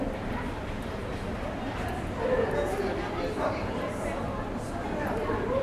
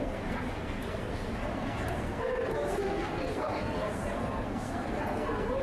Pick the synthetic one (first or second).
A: second